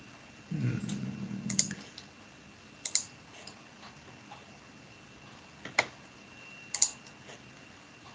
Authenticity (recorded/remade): recorded